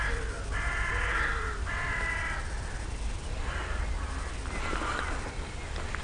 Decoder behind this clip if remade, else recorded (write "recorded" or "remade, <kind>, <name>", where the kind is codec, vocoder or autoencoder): recorded